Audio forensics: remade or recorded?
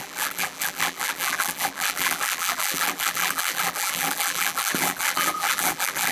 remade